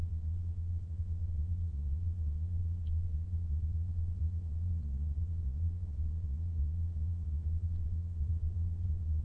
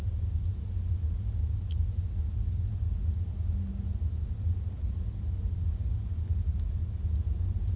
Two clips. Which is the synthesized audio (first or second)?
first